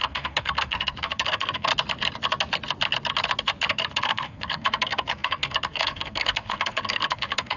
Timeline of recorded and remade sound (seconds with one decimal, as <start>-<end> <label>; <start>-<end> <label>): 0.0-1.7 remade; 1.7-3.7 recorded; 3.7-7.6 remade